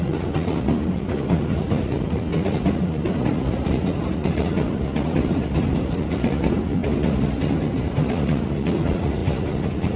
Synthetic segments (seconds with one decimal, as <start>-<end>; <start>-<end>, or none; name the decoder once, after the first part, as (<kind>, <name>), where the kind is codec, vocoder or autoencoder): 0.0-10.0 (vocoder, Vocos)